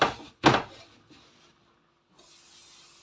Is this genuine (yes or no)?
yes